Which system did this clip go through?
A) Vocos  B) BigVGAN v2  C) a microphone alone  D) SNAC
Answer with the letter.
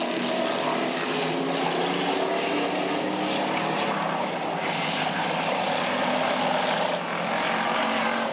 C